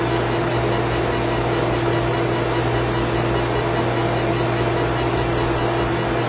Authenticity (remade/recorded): recorded